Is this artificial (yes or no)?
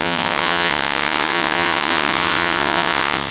yes